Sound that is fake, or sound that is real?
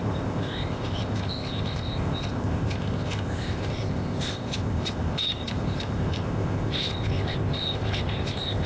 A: fake